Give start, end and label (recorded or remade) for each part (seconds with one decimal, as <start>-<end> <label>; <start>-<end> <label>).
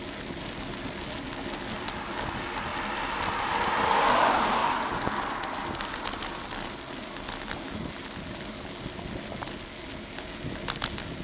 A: 0.0-11.2 recorded